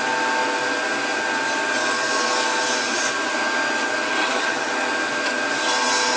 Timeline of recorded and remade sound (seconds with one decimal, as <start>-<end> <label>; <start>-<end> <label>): 0.0-4.2 recorded; 4.2-4.7 remade; 4.7-6.2 recorded